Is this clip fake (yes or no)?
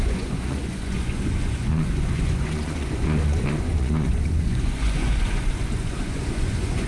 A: yes